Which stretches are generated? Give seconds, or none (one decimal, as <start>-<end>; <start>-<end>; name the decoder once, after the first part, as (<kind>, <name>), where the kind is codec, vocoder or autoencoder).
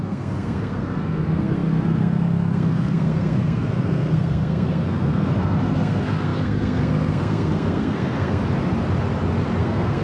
0.0-8.4 (codec, SNAC); 9.6-10.0